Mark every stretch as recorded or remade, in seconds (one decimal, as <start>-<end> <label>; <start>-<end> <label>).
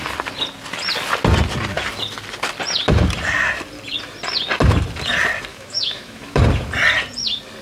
0.0-5.5 recorded; 5.5-6.4 remade; 6.4-7.6 recorded